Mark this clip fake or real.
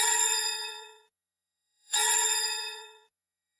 fake